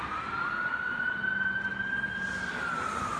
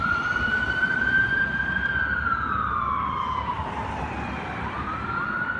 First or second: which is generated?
second